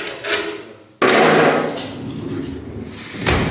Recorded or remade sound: recorded